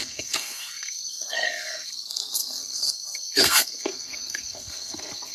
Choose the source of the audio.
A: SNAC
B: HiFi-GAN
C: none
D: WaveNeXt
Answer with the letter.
A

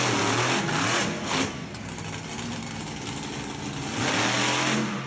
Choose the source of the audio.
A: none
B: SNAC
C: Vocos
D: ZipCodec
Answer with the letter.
A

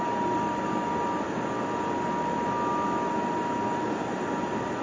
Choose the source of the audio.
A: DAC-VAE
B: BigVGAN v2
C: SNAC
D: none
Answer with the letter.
D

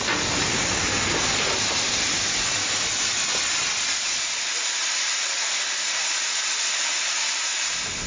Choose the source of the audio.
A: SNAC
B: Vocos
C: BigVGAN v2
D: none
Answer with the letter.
D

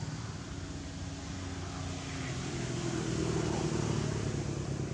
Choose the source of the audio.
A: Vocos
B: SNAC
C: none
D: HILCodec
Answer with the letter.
C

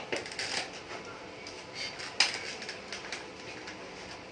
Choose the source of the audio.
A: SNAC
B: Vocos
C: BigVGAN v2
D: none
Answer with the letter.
D